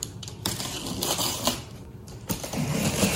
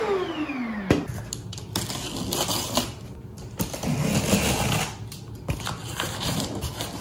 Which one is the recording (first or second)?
second